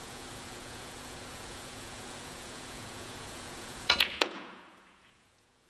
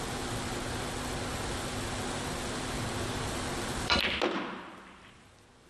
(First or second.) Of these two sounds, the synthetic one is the first